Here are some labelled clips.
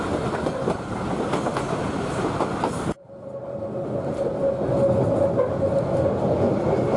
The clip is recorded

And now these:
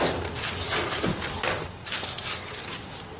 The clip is recorded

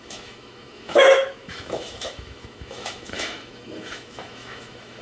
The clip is remade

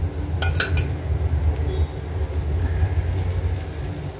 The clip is recorded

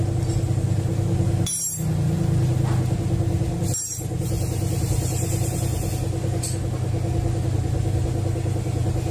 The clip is recorded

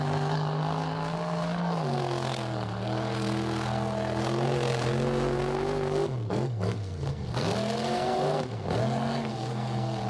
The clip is remade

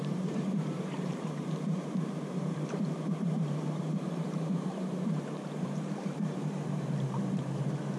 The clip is remade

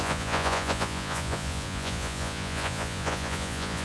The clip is remade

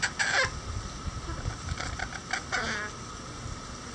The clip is recorded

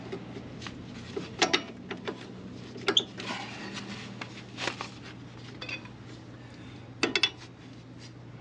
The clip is recorded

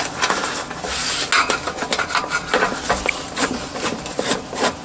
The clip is recorded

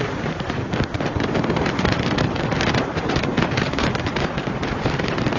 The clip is remade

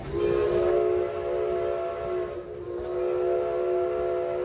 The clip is recorded